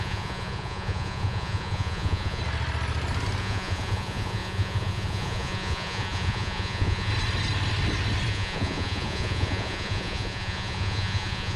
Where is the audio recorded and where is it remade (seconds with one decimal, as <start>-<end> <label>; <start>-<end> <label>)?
0.0-2.4 remade; 2.4-3.4 recorded; 3.4-7.1 remade; 7.1-8.3 recorded; 8.3-11.6 remade